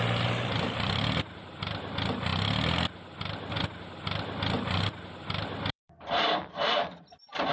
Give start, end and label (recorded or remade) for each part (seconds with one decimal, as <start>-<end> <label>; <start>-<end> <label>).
0.0-2.3 remade; 2.3-5.7 recorded; 5.7-7.5 remade

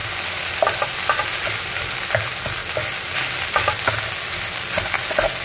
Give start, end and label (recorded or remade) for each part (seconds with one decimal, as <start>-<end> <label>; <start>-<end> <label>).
0.0-5.4 recorded

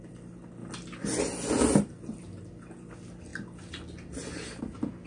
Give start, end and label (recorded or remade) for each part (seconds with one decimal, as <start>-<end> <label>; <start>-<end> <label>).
0.0-5.1 recorded

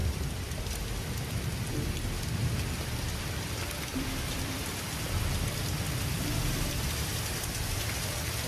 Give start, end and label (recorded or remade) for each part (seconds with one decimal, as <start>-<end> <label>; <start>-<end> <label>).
0.0-0.6 remade; 0.6-3.9 recorded; 3.9-7.4 remade; 7.4-8.5 recorded